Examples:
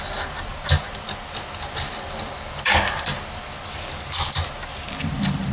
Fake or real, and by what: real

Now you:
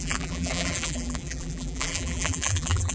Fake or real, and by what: fake, vocoder, BigVGAN v2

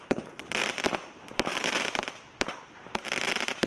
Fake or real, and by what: fake, vocoder, BigVGAN v2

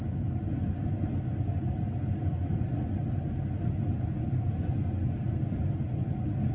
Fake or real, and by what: real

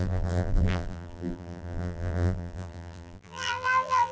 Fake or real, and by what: fake, vocoder, BigVGAN v2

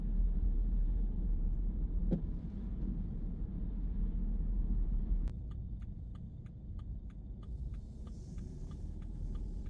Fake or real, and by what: fake, vocoder, BigVGAN v2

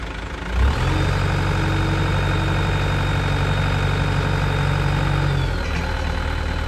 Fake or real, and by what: real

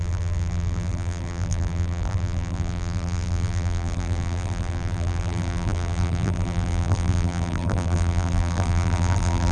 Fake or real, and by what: fake, vocoder, BigVGAN v2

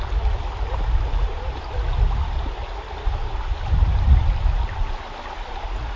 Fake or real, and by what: real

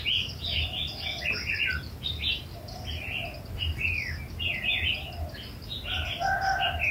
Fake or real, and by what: real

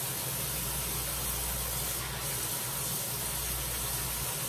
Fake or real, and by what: real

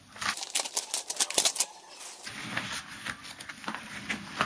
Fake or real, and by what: real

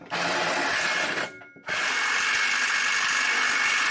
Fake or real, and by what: real